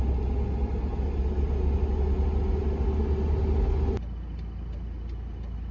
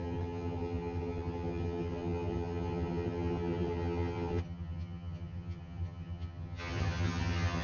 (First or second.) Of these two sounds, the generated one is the second